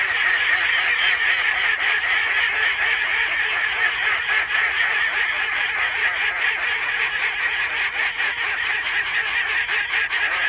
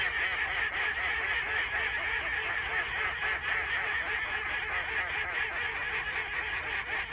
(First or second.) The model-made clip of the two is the first